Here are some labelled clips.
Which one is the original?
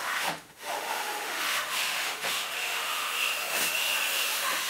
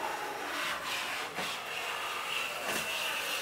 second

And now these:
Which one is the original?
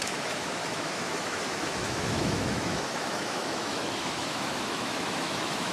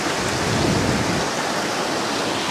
second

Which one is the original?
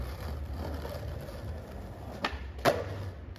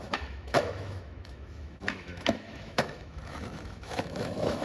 first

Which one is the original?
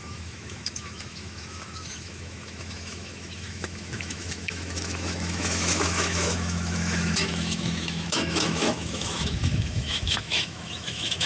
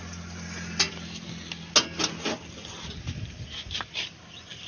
second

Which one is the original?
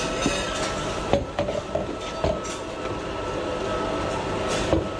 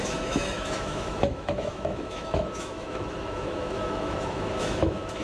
first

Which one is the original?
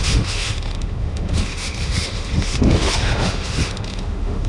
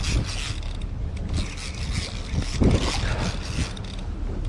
second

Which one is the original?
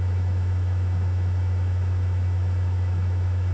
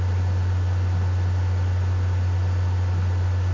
second